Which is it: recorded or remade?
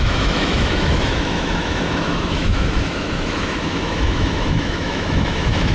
remade